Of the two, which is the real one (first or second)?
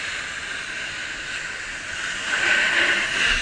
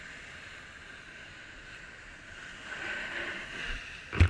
first